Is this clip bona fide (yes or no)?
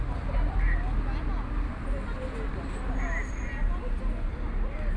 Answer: yes